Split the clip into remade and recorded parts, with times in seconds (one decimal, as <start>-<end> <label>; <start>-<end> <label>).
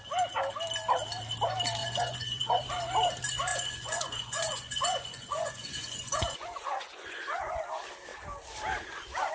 0.0-1.8 recorded; 1.8-2.7 remade; 2.7-3.5 recorded; 3.5-7.6 remade; 7.6-9.3 recorded